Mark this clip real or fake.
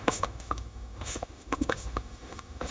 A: fake